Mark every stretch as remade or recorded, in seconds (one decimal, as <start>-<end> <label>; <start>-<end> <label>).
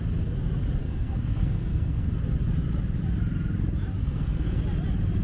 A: 0.0-0.8 recorded; 0.8-2.1 remade; 2.1-4.0 recorded; 4.0-4.6 remade; 4.6-5.2 recorded